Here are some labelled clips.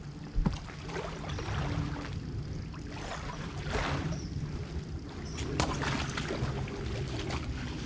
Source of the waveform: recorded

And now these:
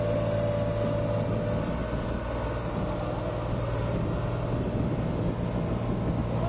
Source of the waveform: recorded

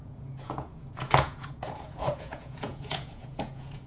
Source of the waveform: remade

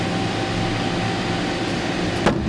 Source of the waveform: recorded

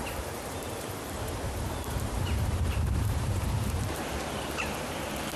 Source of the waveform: remade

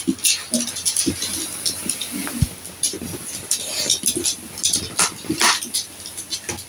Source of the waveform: recorded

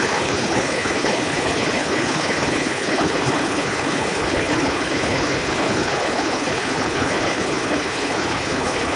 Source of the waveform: remade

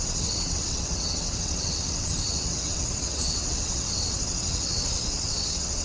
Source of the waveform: remade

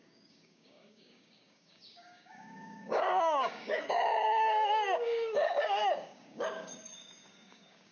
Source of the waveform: remade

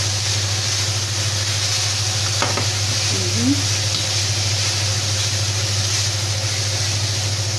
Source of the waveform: recorded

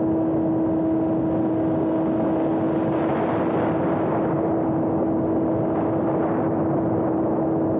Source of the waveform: recorded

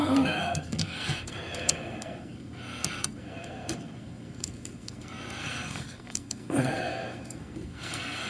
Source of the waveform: remade